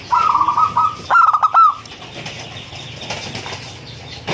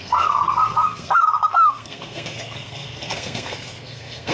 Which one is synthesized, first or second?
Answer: second